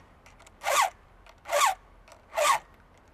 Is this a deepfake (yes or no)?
no